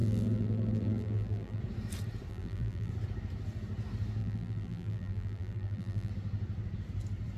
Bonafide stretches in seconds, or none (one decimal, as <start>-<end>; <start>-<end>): 1.6-2.3; 2.9-4.2; 6.1-7.4